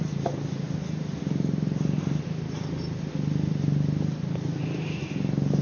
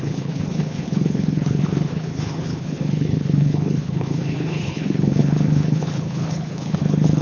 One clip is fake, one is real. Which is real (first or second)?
first